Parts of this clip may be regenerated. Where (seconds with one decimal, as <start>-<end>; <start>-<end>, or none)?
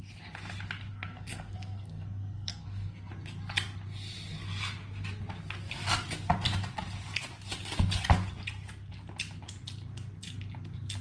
0.9-3.1